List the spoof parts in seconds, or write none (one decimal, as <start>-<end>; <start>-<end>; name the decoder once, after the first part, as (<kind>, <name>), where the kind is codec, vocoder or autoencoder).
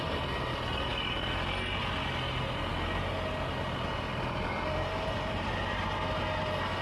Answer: none